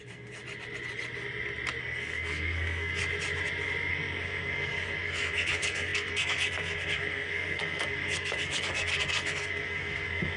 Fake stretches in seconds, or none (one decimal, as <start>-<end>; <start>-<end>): 0.0-0.4; 1.8-3.0; 3.9-10.4